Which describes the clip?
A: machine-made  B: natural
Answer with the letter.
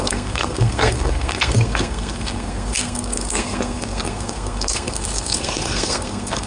A